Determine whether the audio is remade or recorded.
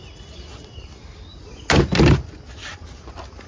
recorded